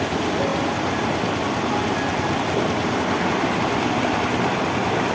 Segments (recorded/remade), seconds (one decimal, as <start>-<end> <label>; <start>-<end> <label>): 0.0-1.8 remade; 1.8-2.8 recorded; 2.8-5.1 remade